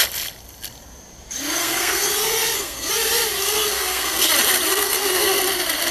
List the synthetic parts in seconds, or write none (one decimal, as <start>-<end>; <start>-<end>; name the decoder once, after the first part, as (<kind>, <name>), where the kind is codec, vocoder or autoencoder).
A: 1.6-2.9 (codec, SNAC); 3.4-4.3; 4.7-5.4